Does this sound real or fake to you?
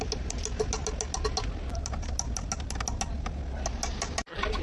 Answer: real